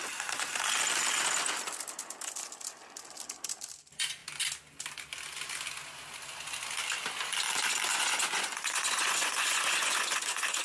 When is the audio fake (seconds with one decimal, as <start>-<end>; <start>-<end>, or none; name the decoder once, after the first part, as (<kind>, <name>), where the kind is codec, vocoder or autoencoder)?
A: 7.9-10.6 (vocoder, Vocos)

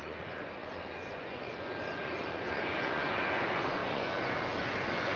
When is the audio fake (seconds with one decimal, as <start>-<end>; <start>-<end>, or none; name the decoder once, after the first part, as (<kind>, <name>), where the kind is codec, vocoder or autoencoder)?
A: 0.0-5.2 (vocoder, Vocos)

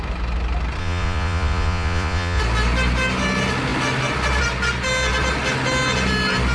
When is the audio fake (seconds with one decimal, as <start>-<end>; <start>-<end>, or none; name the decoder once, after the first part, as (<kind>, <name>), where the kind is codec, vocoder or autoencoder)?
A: 0.8-2.4 (vocoder, Vocos)

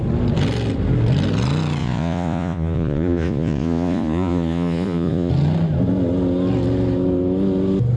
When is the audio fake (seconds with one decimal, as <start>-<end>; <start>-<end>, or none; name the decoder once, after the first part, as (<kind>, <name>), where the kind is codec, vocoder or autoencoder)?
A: 1.8-5.3 (vocoder, Vocos)

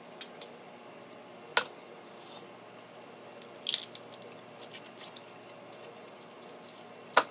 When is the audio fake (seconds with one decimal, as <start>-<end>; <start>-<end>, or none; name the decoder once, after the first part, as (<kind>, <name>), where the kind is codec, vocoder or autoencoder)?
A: none

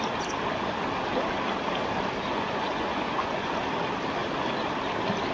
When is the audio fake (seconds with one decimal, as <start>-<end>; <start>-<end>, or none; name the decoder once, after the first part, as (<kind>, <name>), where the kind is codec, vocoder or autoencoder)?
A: 2.3-3.5 (vocoder, Vocos)

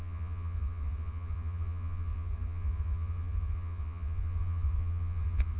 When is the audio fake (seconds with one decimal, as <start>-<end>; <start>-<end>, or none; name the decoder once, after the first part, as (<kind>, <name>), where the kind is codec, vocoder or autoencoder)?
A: 0.0-5.6 (vocoder, Vocos)

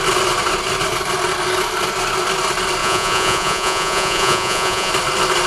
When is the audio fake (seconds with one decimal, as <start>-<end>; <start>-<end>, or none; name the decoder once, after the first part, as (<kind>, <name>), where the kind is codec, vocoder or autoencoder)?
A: 2.8-4.9 (vocoder, Vocos)